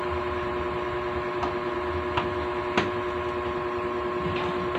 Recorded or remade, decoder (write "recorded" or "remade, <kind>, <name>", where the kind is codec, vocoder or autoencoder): recorded